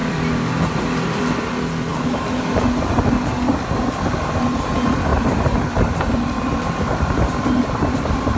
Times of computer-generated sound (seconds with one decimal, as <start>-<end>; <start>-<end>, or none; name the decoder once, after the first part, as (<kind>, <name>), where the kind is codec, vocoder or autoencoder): 0.0-1.2 (vocoder, BigVGAN v2); 1.9-2.5; 5.1-8.4

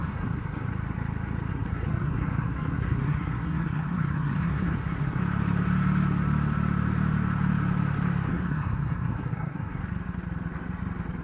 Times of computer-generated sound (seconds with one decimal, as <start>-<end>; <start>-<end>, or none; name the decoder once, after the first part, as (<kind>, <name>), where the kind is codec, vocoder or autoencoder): 0.0-0.7 (codec, SNAC); 1.5-5.2; 8.3-9.8

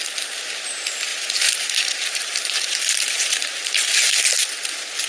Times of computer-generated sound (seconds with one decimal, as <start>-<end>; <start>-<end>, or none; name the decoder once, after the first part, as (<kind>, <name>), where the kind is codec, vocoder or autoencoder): 1.1-4.2 (vocoder, BigVGAN v2)